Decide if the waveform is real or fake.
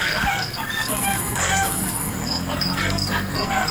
fake